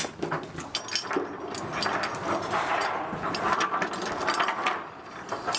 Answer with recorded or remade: recorded